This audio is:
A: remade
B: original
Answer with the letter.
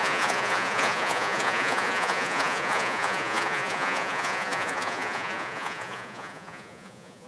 A